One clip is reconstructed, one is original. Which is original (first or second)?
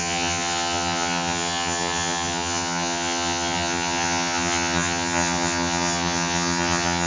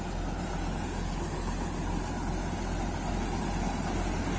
second